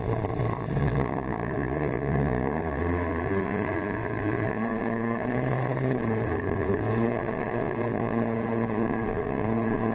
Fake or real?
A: fake